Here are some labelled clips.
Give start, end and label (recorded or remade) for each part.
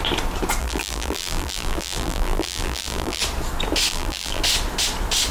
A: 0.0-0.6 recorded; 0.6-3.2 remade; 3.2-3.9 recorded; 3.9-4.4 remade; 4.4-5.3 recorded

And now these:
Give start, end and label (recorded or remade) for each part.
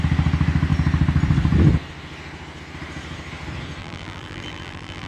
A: 0.0-3.8 recorded; 3.8-5.1 remade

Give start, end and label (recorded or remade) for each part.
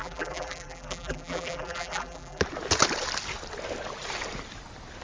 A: 0.0-2.4 remade; 2.4-5.0 recorded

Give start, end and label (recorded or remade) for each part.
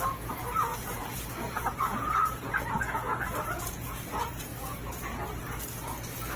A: 0.0-4.5 remade; 4.5-6.4 recorded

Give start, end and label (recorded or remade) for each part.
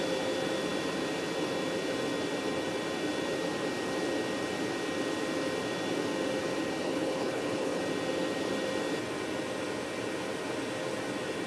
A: 0.0-6.8 recorded; 6.8-7.8 remade; 7.8-11.5 recorded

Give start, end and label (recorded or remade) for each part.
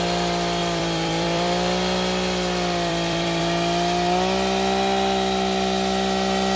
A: 0.0-0.6 recorded; 0.6-3.4 remade; 3.4-6.6 recorded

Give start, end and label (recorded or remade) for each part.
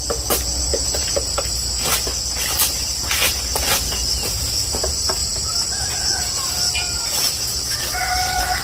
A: 0.0-0.7 recorded; 0.7-1.3 remade; 1.3-5.2 recorded; 5.2-8.1 remade; 8.1-8.6 recorded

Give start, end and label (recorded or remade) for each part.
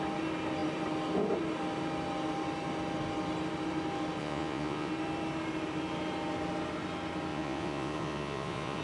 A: 0.0-4.2 recorded; 4.2-4.9 remade; 4.9-7.3 recorded; 7.3-8.8 remade